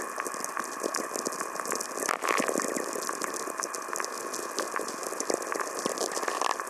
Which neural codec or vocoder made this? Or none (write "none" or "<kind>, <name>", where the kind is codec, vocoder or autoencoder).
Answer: none